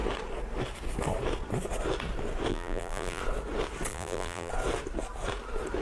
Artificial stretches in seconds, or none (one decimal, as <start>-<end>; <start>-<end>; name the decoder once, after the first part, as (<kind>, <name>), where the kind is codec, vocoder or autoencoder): 2.5-3.2 (vocoder, BigVGAN v2); 3.9-4.5